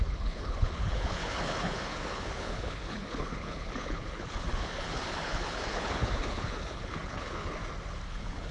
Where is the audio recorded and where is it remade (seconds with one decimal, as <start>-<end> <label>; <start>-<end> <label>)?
0.0-7.6 remade; 7.6-8.1 recorded; 8.1-8.5 remade